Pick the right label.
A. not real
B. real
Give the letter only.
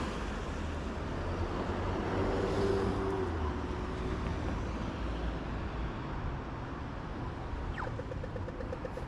B